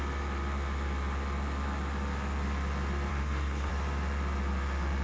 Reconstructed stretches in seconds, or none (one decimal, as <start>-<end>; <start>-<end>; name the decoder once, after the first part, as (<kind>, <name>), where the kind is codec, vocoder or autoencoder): 3.1-3.7 (codec, SNAC)